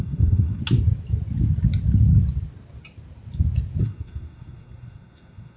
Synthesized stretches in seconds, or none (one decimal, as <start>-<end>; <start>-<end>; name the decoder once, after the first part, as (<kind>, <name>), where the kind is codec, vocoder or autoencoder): 0.0-0.6 (codec, SNAC); 3.8-5.6